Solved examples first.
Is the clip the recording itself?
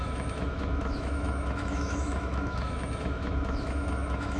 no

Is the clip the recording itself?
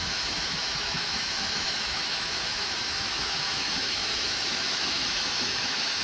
no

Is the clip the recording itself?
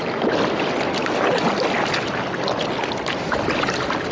yes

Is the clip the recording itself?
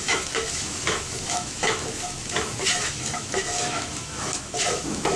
no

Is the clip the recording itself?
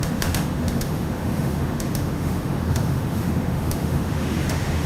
no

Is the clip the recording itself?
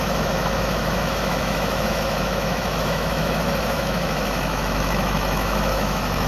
no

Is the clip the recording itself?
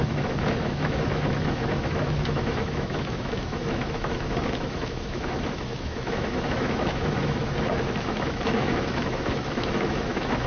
no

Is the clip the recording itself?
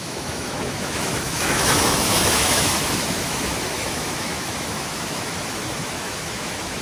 no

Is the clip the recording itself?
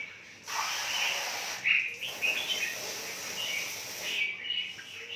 yes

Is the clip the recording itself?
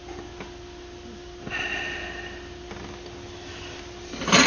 yes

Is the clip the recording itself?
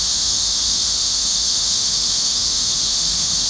no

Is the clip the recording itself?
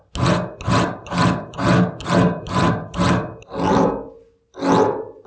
yes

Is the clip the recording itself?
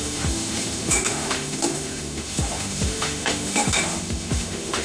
no